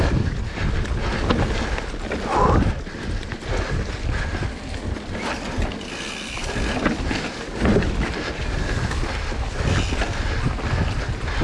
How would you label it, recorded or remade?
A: recorded